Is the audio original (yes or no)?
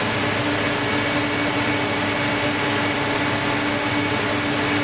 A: yes